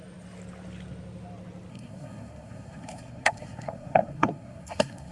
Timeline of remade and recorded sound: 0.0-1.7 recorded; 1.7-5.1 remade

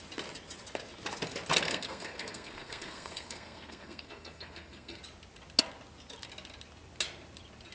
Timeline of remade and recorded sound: 0.0-1.6 recorded; 1.6-5.0 remade; 5.0-7.7 recorded

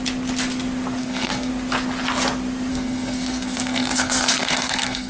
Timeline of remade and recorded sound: 0.0-1.0 recorded; 1.0-1.5 remade; 1.5-2.7 recorded; 2.7-5.1 remade

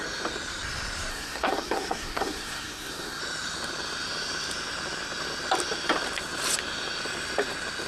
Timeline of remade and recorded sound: 0.0-1.1 recorded; 1.1-3.2 remade; 3.2-7.9 recorded

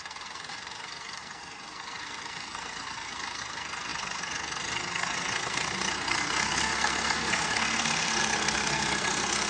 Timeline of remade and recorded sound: 0.0-9.5 remade